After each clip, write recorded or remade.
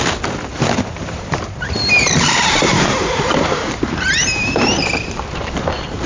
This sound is remade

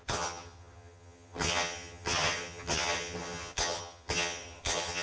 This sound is remade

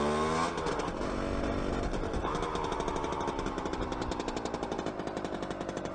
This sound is recorded